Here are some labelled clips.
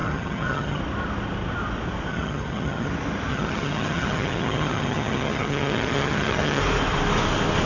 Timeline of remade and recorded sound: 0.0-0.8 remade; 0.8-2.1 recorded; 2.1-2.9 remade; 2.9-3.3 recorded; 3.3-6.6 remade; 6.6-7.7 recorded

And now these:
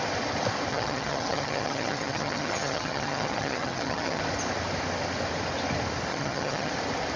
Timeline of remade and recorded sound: 0.0-0.7 recorded; 0.7-4.2 remade; 4.2-6.1 recorded; 6.1-6.7 remade; 6.7-7.2 recorded

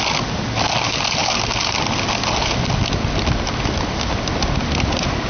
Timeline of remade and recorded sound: 0.0-5.3 recorded

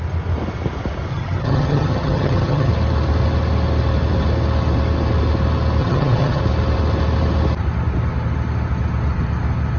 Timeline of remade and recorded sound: 0.0-1.1 recorded; 1.1-2.7 remade; 2.7-5.8 recorded; 5.8-6.4 remade; 6.4-9.8 recorded

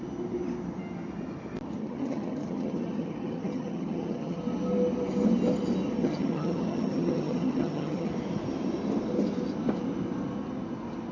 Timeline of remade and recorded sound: 0.0-1.8 recorded; 1.8-4.4 remade; 4.4-6.0 recorded; 6.0-8.1 remade; 8.1-11.1 recorded

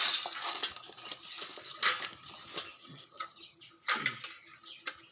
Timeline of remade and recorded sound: 0.0-2.8 recorded; 2.8-3.6 remade; 3.6-5.1 recorded